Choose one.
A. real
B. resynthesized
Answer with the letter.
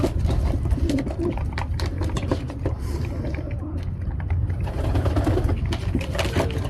A